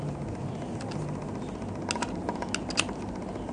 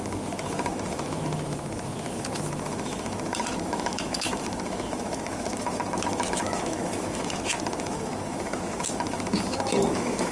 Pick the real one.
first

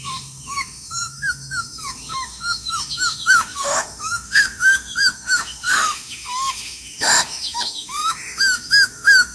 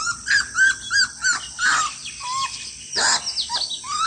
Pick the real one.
second